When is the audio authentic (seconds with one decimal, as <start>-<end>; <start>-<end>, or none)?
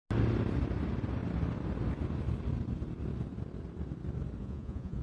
0.0-4.4